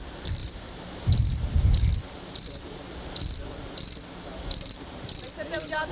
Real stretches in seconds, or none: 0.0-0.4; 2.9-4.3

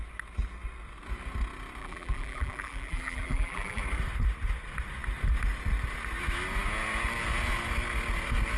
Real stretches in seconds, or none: 0.0-1.8; 3.8-8.6

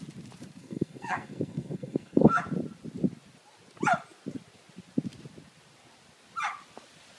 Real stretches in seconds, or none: 0.0-0.6; 2.4-7.2

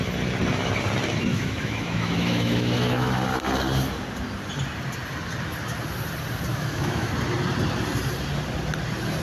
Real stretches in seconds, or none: 0.0-1.3; 3.1-6.5; 7.1-9.2

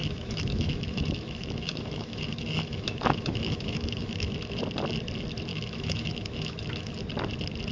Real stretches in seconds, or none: 4.6-5.5; 6.9-7.7

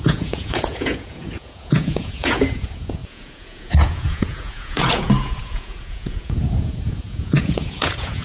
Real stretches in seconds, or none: none

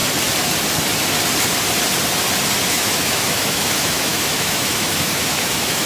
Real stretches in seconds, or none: 0.0-2.7

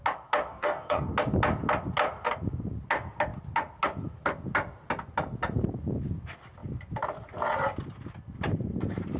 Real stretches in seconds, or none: 0.0-0.5; 1.1-9.2